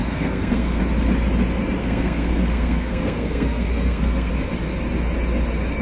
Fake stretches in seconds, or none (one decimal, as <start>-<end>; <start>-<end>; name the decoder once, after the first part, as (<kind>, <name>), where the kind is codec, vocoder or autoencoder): 0.0-0.8 (codec, SNAC); 1.8-4.3